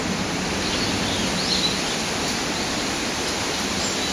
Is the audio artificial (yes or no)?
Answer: no